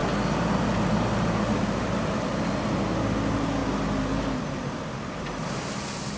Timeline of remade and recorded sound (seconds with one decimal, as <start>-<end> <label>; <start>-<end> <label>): 0.0-6.2 recorded